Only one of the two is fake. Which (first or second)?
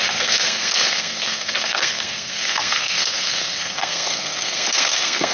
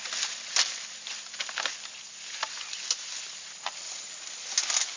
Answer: first